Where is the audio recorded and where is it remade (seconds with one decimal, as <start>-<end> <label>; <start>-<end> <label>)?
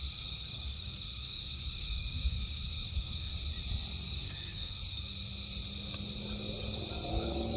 0.0-3.3 remade; 3.3-4.1 recorded; 4.1-5.1 remade; 5.1-7.1 recorded; 7.1-7.6 remade